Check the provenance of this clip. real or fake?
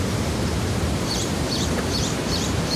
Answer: fake